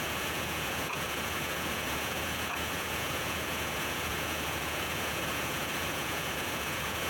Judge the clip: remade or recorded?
remade